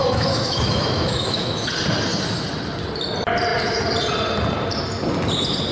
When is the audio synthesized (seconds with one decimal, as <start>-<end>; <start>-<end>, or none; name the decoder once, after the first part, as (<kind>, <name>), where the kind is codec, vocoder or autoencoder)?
0.0-1.7 (autoencoder, DAC-VAE)